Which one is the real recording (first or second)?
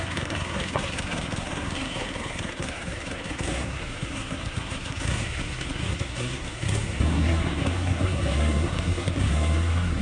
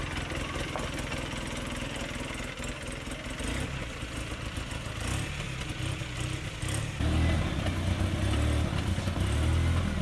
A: second